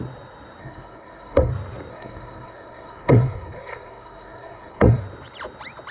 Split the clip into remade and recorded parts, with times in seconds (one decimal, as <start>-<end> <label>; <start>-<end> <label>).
0.0-0.6 recorded; 0.6-1.5 remade; 1.5-1.9 recorded; 1.9-5.0 remade; 5.0-5.9 recorded